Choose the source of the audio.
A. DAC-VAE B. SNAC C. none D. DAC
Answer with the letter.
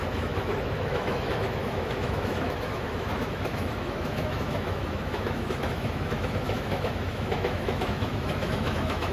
A